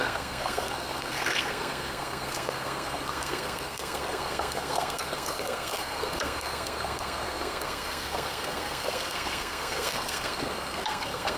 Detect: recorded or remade remade